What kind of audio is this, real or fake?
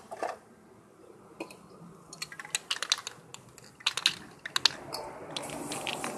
real